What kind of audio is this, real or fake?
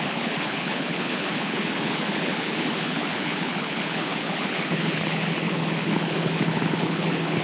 fake